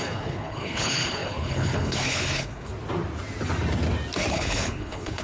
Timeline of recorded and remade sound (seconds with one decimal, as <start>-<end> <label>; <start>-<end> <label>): 0.0-2.7 remade; 2.7-4.3 recorded; 4.3-5.2 remade